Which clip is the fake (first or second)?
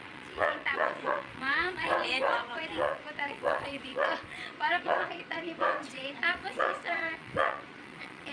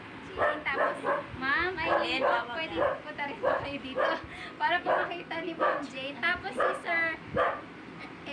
first